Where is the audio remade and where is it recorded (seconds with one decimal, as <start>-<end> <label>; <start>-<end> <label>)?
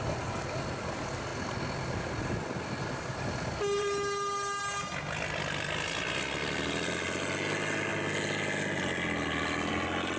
0.0-10.2 recorded